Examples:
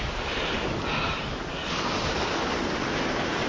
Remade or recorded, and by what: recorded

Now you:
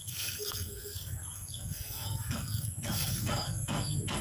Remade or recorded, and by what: remade, codec, SNAC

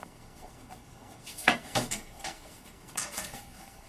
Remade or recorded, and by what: remade, codec, SNAC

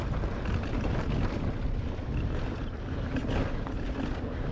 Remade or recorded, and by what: recorded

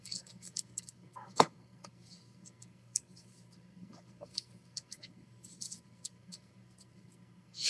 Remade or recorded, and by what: remade, codec, SNAC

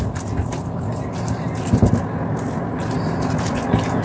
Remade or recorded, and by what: recorded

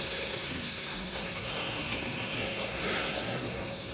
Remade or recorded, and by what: remade, codec, SNAC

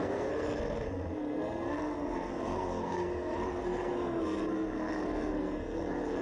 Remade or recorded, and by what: remade, codec, SNAC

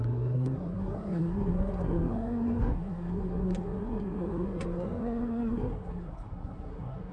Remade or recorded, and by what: remade, codec, SNAC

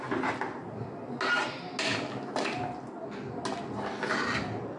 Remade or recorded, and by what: recorded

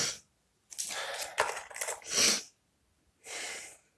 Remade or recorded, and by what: recorded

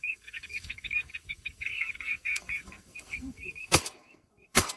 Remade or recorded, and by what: remade, codec, SNAC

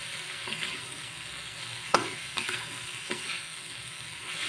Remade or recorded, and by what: remade, codec, SNAC